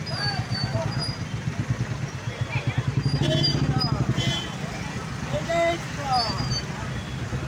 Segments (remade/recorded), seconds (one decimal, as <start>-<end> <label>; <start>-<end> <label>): 0.0-7.5 recorded